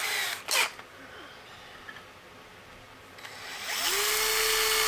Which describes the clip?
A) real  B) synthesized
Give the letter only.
A